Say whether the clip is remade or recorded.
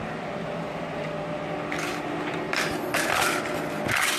recorded